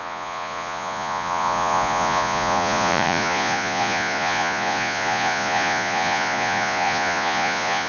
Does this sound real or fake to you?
fake